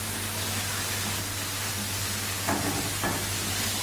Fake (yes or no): no